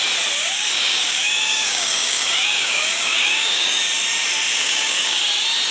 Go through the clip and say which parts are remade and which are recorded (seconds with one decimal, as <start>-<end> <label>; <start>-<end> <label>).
0.0-0.4 recorded; 0.4-3.8 remade; 3.8-4.5 recorded; 4.5-5.2 remade; 5.2-5.7 recorded